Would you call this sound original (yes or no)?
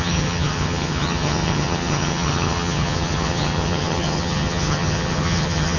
no